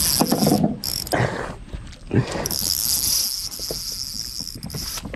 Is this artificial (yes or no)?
no